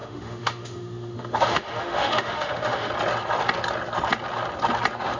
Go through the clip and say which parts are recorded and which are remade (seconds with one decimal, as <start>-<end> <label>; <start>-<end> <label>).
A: 0.0-2.9 remade; 2.9-5.2 recorded